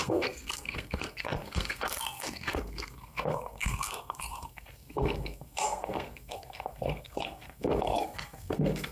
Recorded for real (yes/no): no